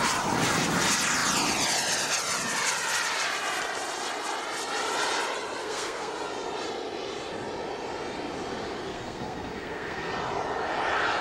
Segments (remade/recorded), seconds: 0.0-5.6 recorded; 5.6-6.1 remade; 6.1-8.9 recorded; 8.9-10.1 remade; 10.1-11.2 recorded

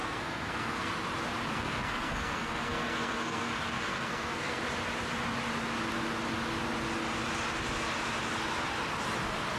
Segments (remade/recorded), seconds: 0.0-0.9 remade; 0.9-1.5 recorded; 1.5-4.6 remade; 4.6-9.6 recorded